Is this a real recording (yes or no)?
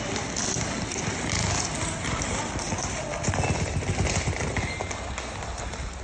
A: yes